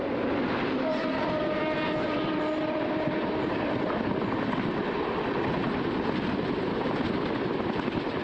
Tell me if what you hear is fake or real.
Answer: real